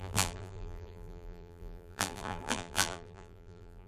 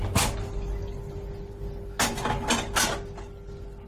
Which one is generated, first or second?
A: first